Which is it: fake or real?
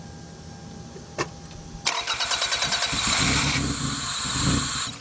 real